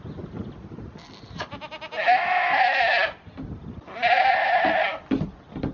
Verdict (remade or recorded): recorded